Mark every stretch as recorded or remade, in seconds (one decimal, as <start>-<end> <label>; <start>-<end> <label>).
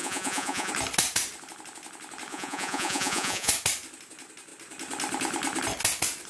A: 0.0-0.7 remade; 0.7-2.3 recorded; 2.3-3.5 remade; 3.5-6.3 recorded